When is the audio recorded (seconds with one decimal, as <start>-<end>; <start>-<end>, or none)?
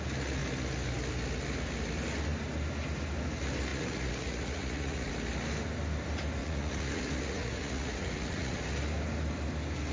0.0-3.7; 5.1-6.4; 8.6-9.9